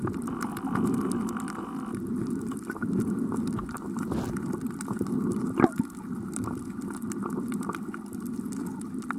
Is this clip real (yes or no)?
yes